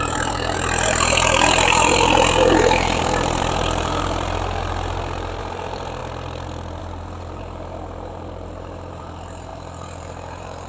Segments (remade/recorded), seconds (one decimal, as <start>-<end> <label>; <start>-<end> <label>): 0.0-6.0 remade; 6.0-6.8 recorded; 6.8-10.7 remade